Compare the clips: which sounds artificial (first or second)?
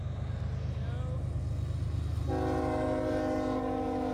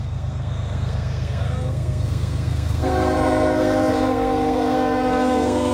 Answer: second